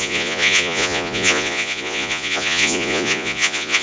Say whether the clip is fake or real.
fake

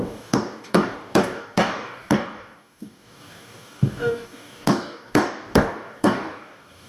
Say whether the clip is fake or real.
fake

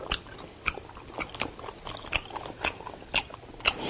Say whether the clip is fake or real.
real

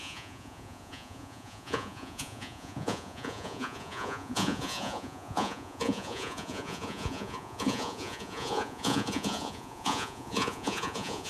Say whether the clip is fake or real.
fake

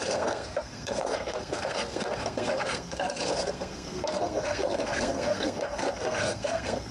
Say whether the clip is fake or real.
fake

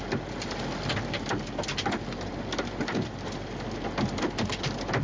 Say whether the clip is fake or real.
real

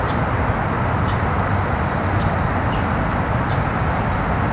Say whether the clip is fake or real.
real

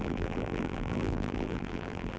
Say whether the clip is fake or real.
fake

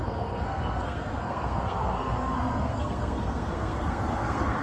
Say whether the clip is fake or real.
fake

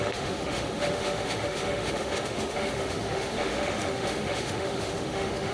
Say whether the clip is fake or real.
fake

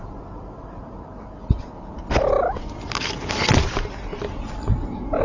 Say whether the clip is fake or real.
real